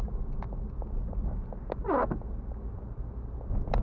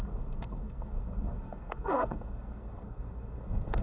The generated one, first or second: second